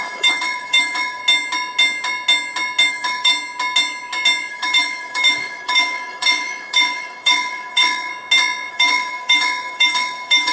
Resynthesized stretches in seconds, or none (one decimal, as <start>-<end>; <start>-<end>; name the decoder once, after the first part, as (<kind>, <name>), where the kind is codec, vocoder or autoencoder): 0.0-1.2 (autoencoder, DAC-VAE); 2.9-3.3; 4.5-8.1; 8.7-10.5